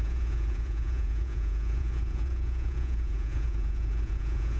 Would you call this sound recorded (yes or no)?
no